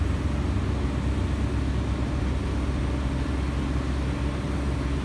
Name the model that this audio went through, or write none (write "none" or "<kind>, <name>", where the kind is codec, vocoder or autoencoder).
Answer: none